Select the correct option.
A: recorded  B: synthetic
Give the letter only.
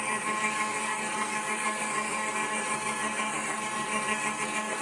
B